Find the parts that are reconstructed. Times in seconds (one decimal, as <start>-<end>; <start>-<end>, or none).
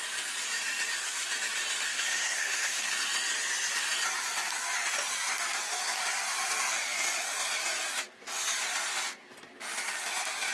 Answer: 1.9-2.9